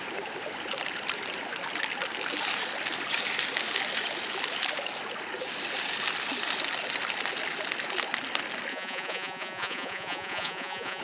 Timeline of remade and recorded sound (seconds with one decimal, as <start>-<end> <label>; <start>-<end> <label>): 0.0-8.7 recorded; 8.7-11.0 remade